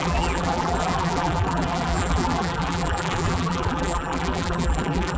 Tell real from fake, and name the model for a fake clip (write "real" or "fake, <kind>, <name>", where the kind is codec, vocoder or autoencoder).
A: fake, vocoder, BigVGAN v2